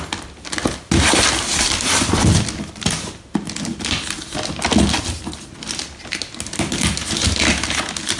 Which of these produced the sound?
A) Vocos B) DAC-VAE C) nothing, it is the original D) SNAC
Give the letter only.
C